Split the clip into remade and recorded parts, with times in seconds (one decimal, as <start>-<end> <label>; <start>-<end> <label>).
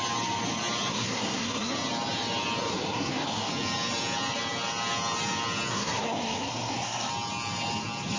0.0-0.9 recorded; 0.9-1.7 remade; 1.7-2.7 recorded; 2.7-3.5 remade; 3.5-5.7 recorded; 5.7-7.1 remade; 7.1-8.2 recorded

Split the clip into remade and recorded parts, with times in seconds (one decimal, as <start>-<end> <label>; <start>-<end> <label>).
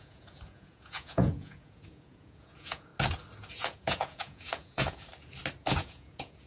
0.0-2.9 remade; 2.9-3.5 recorded; 3.5-5.1 remade; 5.1-5.6 recorded; 5.6-6.5 remade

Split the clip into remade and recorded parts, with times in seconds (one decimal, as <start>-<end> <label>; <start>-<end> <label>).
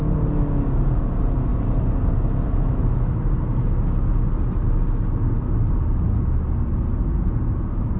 0.0-6.9 recorded; 6.9-7.4 remade; 7.4-8.0 recorded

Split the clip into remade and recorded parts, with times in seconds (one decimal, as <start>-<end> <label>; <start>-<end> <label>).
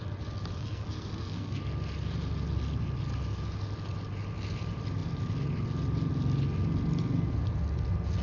0.0-0.6 recorded; 0.6-1.6 remade; 1.6-8.2 recorded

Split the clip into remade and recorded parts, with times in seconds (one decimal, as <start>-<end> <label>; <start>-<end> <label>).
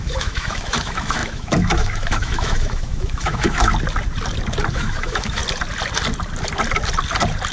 0.0-3.7 remade; 3.7-4.7 recorded; 4.7-5.4 remade; 5.4-7.5 recorded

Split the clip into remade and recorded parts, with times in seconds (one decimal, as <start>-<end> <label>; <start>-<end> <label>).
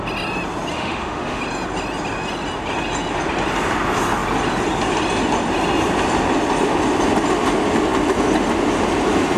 0.0-0.7 recorded; 0.7-1.4 remade; 1.4-9.4 recorded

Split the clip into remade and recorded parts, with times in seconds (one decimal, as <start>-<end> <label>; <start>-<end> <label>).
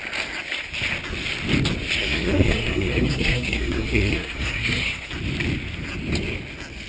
0.0-2.0 recorded; 2.0-5.1 remade; 5.1-6.9 recorded